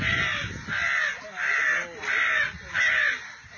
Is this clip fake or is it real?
real